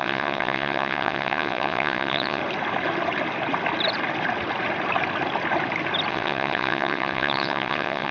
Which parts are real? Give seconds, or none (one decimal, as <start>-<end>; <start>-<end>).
2.4-6.1